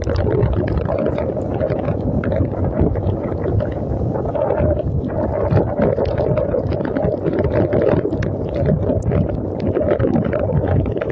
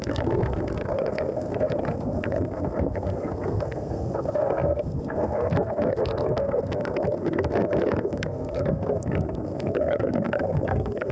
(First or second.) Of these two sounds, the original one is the first